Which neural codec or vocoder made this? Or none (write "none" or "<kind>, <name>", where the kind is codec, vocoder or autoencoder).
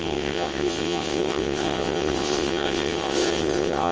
vocoder, WaveNeXt